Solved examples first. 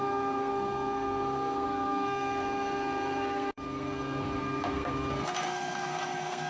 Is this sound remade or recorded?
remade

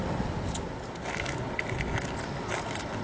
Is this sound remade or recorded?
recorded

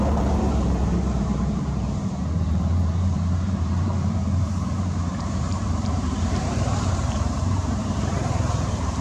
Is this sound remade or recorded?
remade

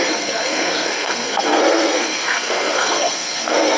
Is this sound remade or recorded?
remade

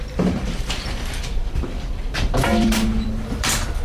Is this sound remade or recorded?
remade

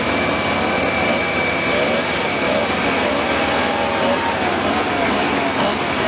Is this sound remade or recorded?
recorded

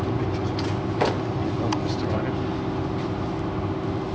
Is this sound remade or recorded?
recorded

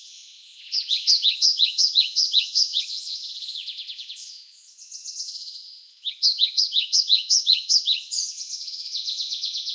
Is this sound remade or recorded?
remade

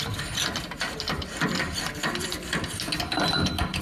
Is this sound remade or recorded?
recorded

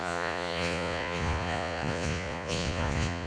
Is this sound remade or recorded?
remade